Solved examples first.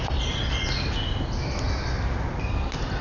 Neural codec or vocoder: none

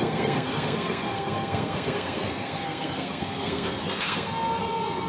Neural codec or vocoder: codec, SNAC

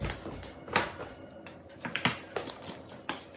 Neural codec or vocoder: none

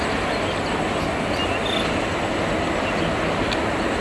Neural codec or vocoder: none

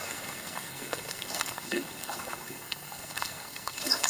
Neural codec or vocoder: codec, SNAC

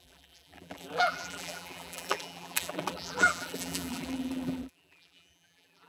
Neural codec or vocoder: vocoder, BigVGAN v2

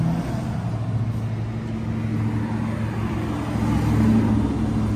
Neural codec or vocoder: none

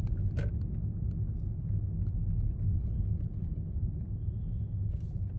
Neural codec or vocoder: none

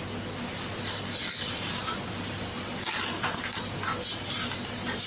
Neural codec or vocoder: none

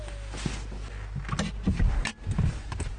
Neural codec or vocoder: none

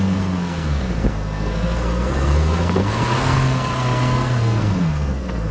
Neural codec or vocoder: codec, SNAC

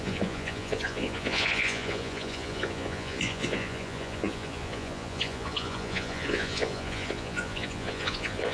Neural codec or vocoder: vocoder, Vocos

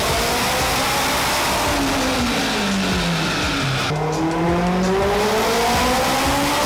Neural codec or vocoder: none